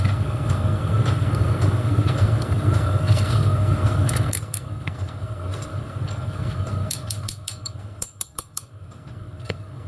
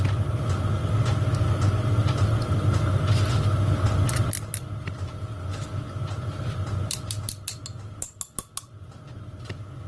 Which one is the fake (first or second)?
first